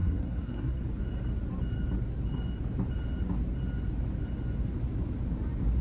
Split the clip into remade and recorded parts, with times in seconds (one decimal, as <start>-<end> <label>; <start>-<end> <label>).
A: 0.0-0.8 remade; 0.8-5.8 recorded